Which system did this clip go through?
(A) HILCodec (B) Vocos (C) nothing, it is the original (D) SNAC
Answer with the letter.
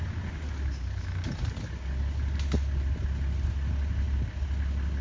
C